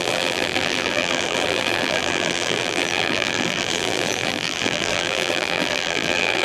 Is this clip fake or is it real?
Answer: fake